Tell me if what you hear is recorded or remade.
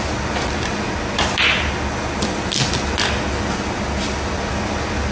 recorded